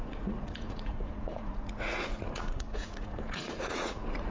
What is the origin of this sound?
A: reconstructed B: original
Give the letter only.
A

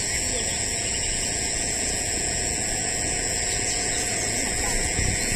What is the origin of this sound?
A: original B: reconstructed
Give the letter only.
B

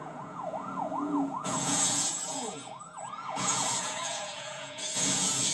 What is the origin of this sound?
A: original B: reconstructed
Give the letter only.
B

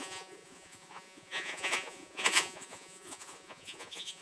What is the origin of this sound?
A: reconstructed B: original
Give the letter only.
A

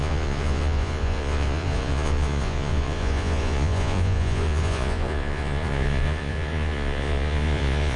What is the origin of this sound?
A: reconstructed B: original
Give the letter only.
A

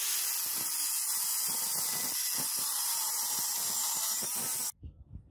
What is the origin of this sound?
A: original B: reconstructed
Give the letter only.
A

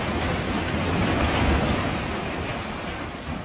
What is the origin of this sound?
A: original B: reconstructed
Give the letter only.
A